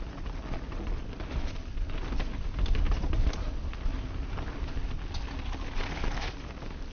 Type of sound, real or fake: real